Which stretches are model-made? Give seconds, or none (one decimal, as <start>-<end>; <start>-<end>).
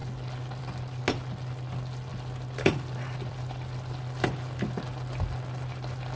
none